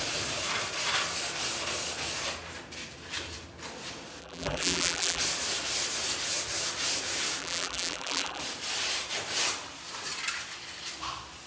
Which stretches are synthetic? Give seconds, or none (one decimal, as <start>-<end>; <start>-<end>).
4.2-5.2; 7.4-8.4

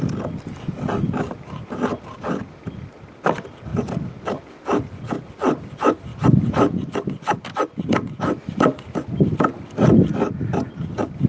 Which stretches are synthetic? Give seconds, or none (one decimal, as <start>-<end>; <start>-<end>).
none

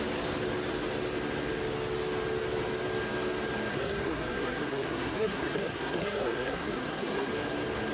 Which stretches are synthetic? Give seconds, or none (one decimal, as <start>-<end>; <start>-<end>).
3.7-7.3

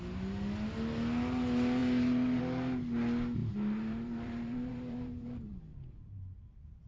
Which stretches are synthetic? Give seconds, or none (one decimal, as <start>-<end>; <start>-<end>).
3.4-5.6

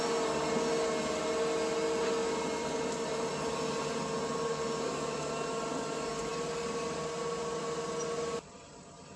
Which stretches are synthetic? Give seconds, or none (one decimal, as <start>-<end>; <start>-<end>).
none

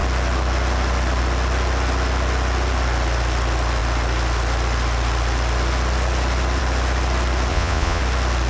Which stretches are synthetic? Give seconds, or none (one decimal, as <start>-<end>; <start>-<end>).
7.5-8.0

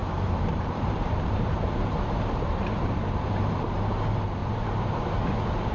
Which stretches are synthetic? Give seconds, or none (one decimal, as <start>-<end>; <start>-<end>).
0.0-3.4; 4.4-5.0